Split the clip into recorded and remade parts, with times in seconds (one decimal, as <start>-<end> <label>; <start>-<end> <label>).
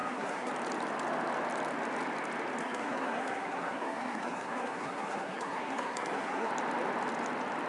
0.0-0.5 remade; 0.5-2.6 recorded; 2.6-6.5 remade; 6.5-7.7 recorded